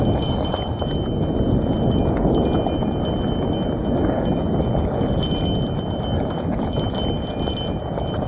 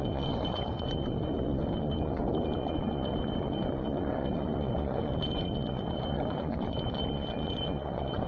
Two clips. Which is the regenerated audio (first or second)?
second